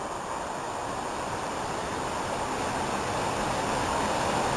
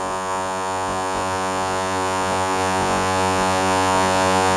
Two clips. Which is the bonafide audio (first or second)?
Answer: first